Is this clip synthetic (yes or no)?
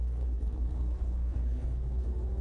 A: yes